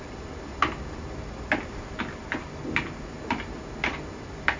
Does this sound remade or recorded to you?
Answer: recorded